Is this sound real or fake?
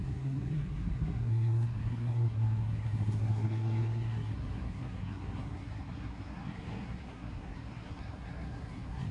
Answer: fake